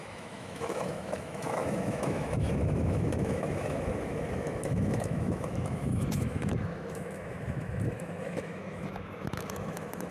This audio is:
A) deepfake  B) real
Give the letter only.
A